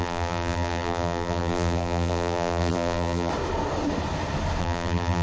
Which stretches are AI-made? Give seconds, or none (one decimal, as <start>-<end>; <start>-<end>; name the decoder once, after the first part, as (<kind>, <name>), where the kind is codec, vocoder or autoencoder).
0.0-3.3 (vocoder, BigVGAN v2); 4.6-5.2